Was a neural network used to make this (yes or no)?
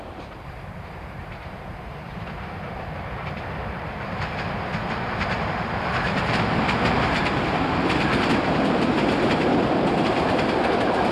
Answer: yes